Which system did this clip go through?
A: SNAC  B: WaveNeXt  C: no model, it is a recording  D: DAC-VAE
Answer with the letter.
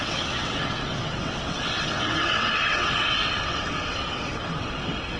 B